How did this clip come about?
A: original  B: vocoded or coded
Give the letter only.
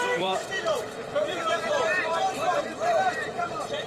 B